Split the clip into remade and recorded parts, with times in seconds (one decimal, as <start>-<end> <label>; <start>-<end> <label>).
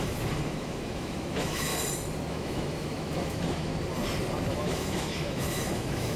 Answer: 0.0-1.7 remade; 1.7-2.3 recorded; 2.3-3.7 remade; 3.7-4.5 recorded; 4.5-6.2 remade